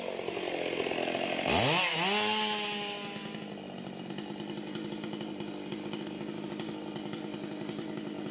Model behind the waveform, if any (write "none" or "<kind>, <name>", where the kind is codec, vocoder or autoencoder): none